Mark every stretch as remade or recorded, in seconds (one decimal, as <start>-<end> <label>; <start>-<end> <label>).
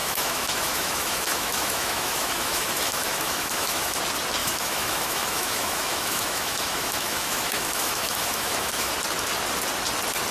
0.0-4.0 remade; 4.0-4.4 recorded; 4.4-8.9 remade; 8.9-10.3 recorded